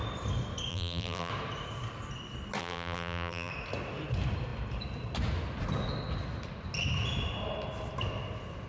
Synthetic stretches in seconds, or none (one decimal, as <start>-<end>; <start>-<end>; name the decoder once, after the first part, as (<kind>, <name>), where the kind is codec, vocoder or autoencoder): 0.7-1.3 (vocoder, BigVGAN v2); 2.6-3.5

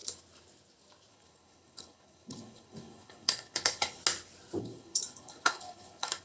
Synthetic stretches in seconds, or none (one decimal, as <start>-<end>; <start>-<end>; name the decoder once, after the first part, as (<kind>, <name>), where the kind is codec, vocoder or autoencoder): 1.1-4.0 (codec, HILCodec); 4.6-6.2

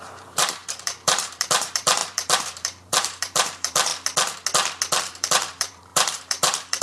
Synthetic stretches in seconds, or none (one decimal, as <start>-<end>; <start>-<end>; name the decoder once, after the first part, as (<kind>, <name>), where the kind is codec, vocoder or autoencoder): 0.0-3.9 (vocoder, BigVGAN v2); 5.0-6.8

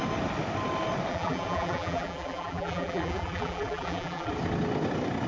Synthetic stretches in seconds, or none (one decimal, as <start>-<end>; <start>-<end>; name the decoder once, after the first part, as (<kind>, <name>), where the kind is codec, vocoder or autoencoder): 1.1-4.3 (vocoder, BigVGAN v2)

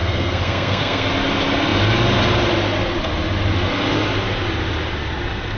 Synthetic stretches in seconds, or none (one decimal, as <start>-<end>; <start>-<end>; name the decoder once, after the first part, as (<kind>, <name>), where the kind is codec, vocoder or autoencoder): 0.0-1.1 (codec, SNAC)

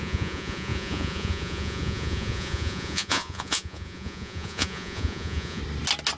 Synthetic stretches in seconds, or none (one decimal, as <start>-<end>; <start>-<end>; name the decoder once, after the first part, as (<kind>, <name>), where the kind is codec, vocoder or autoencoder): 0.0-5.6 (vocoder, Vocos)